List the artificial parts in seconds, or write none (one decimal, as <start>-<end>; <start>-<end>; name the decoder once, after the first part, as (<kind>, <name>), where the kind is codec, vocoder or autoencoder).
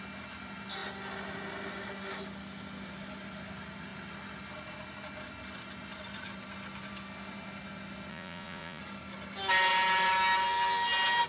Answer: 8.1-8.8 (vocoder, Vocos)